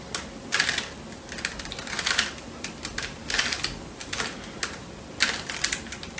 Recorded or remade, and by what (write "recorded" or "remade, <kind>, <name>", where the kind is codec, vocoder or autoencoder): recorded